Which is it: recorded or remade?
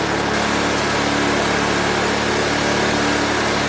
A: recorded